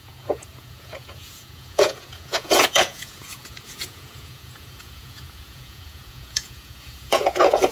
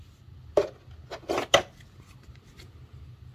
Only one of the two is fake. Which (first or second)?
first